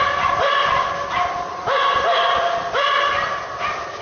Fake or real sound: real